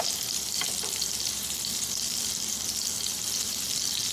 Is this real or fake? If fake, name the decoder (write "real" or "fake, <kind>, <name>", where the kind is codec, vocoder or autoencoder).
fake, vocoder, BigVGAN v2